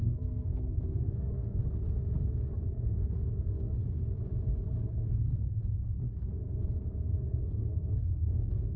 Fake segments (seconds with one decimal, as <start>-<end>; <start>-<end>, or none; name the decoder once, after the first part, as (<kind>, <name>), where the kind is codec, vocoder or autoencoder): 0.0-1.6 (codec, SNAC); 2.6-3.8; 4.9-6.5; 7.3-8.8